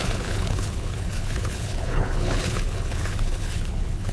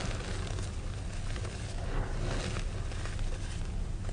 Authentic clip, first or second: second